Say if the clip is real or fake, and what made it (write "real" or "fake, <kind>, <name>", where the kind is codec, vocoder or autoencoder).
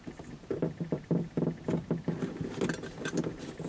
real